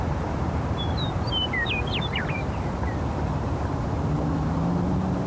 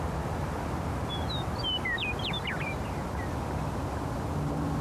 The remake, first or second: first